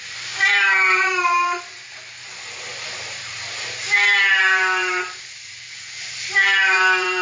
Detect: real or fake fake